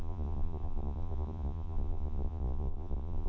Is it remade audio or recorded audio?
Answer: remade